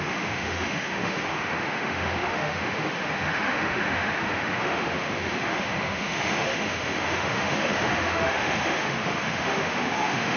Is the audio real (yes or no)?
no